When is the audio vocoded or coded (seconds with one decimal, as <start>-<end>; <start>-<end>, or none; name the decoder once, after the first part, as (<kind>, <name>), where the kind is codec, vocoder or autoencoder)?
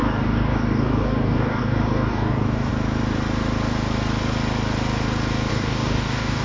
0.0-2.7 (codec, DAC); 5.5-6.4